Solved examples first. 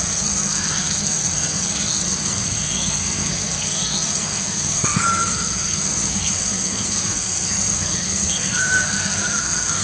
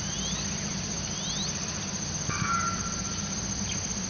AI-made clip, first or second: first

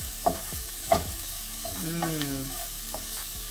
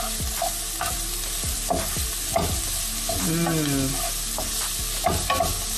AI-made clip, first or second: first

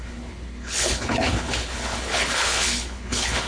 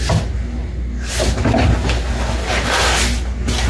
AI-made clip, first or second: first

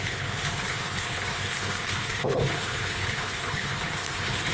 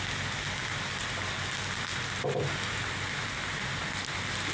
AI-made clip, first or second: first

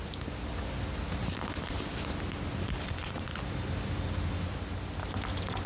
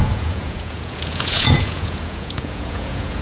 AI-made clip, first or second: second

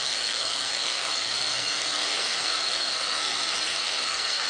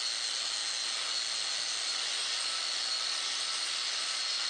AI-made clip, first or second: first